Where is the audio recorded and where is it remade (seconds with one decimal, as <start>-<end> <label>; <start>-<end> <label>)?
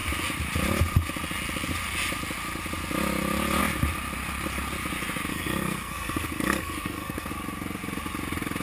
0.0-5.3 recorded; 5.3-7.3 remade; 7.3-8.6 recorded